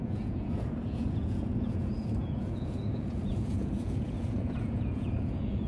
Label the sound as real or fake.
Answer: fake